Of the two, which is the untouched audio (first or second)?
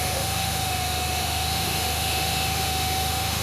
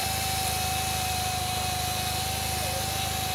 second